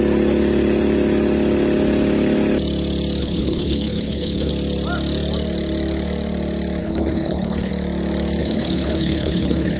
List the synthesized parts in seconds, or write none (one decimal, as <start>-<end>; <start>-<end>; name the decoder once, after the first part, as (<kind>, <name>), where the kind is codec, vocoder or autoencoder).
3.2-4.5 (codec, HILCodec); 6.8-7.7; 8.4-9.8